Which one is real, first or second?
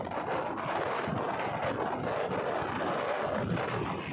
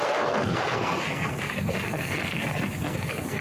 first